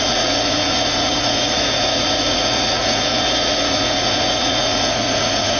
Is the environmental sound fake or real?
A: fake